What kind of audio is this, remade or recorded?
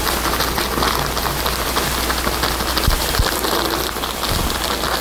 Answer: recorded